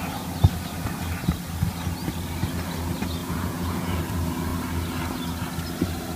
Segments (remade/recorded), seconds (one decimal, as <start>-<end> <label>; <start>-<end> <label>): 0.0-3.2 recorded; 3.2-4.0 remade; 4.0-6.2 recorded